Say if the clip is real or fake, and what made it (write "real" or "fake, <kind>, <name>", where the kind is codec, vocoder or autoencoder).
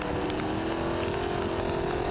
real